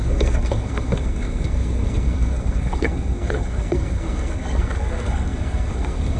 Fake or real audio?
fake